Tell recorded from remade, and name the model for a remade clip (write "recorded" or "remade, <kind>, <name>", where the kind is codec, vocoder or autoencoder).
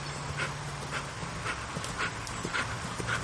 recorded